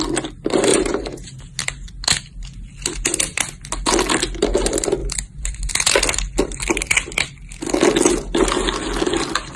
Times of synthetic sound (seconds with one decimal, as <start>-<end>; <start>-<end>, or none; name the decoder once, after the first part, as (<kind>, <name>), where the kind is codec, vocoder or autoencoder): 0.7-1.4 (vocoder, BigVGAN v2); 5.0-5.7